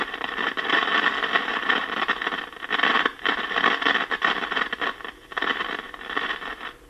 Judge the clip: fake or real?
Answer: fake